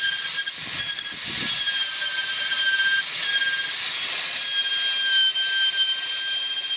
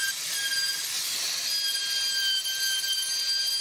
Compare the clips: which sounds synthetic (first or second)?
second